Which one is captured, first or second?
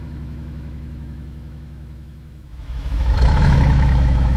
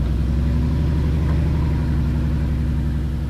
second